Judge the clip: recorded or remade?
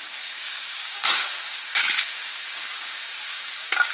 remade